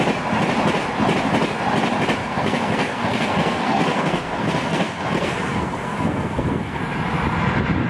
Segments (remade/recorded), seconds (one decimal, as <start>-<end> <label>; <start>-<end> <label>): 0.0-2.2 recorded; 2.2-6.8 remade; 6.8-7.9 recorded